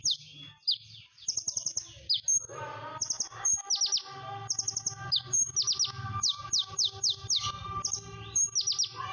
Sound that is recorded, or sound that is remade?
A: recorded